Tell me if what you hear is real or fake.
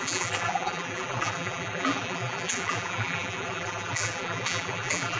fake